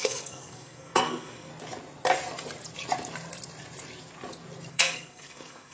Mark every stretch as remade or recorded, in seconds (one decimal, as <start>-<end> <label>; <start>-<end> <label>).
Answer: 0.0-1.5 remade; 1.5-4.7 recorded; 4.7-5.7 remade